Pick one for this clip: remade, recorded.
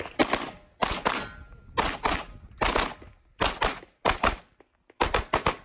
recorded